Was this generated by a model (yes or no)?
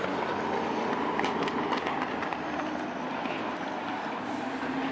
yes